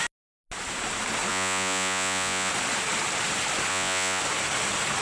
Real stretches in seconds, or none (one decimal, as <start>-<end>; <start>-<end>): 0.0-1.3; 2.5-3.7; 4.2-5.0